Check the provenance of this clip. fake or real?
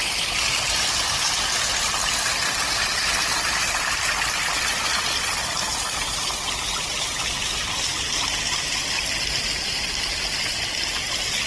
real